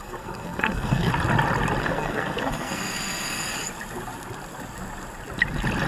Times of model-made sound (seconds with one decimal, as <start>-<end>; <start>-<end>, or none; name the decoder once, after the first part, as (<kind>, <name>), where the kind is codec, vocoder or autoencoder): 0.0-1.1 (codec, SNAC); 1.8-3.6